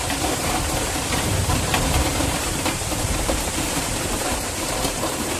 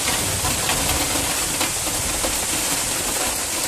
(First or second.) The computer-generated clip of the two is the first